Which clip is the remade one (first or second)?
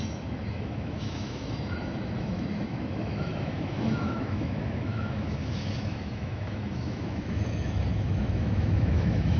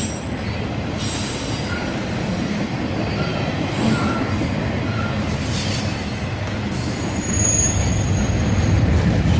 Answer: first